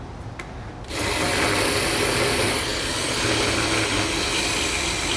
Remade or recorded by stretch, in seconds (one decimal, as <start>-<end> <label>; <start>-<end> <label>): 0.0-5.2 recorded